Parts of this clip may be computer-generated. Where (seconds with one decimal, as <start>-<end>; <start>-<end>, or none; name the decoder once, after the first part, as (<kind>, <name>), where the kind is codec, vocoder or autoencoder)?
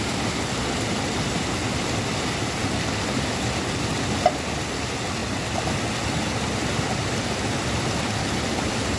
none